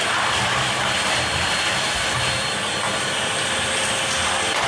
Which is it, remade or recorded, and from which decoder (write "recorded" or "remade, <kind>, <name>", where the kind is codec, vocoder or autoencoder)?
recorded